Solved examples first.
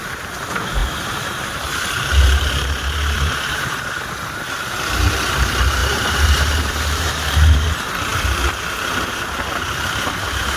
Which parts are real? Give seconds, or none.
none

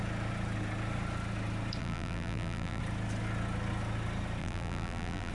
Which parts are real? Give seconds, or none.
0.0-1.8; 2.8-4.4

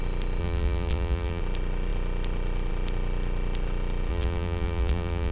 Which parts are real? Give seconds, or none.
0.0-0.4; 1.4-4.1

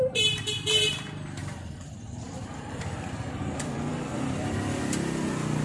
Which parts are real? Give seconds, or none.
0.0-1.4; 4.8-5.6